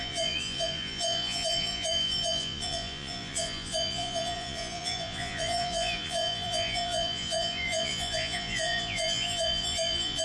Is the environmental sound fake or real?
fake